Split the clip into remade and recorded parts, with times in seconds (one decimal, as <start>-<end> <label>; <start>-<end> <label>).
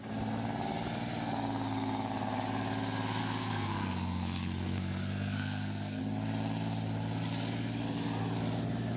0.0-3.2 recorded; 3.2-6.0 remade; 6.0-9.0 recorded